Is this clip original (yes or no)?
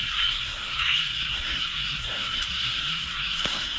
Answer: no